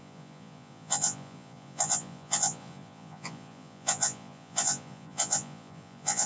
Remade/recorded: remade